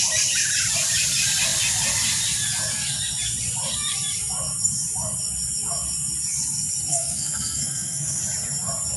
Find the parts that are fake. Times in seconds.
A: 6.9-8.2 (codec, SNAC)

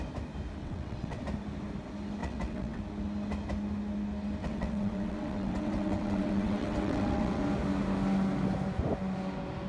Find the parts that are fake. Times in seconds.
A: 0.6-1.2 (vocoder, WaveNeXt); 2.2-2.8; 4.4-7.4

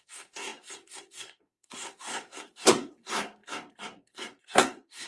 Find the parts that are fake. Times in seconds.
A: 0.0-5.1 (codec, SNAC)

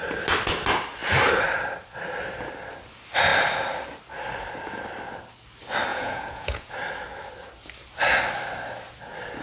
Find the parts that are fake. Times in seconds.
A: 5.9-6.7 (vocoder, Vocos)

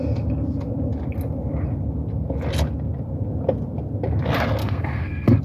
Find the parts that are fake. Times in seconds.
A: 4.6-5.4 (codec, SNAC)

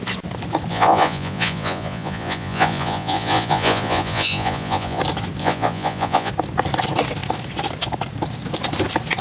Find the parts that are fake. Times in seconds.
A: 0.7-5.0 (vocoder, Vocos); 5.4-6.3